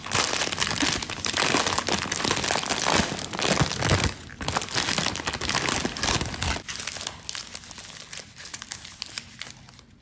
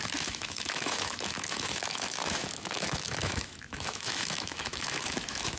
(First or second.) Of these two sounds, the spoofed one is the second